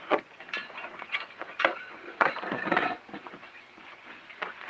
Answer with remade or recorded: remade